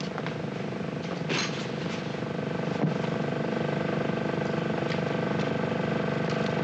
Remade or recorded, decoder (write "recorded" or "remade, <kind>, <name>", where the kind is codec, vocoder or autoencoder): recorded